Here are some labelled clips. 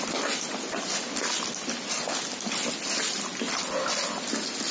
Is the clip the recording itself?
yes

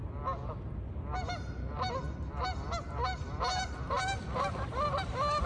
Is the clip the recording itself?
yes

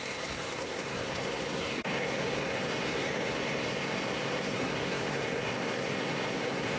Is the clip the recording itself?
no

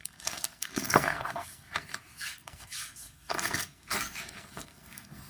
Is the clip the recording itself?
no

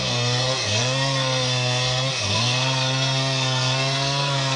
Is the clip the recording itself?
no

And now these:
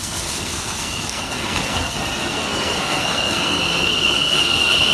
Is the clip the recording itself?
no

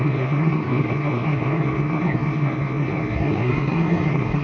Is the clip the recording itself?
no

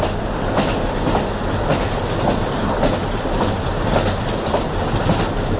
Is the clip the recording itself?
yes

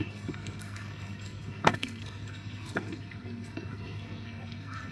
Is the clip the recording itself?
no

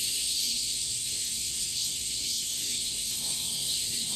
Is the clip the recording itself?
no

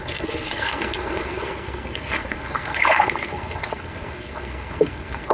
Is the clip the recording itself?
no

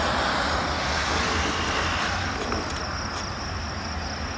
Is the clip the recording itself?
yes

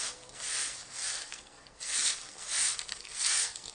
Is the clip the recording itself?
no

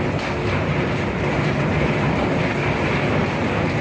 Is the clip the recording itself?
yes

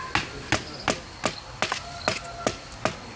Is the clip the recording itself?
yes